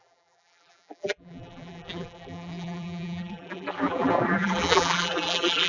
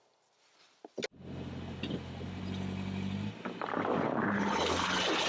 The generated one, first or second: first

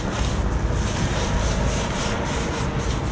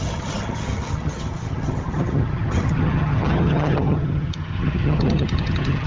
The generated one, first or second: second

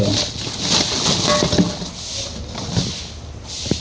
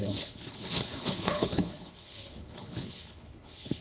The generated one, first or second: second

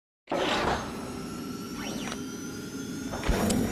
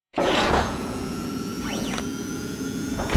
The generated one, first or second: second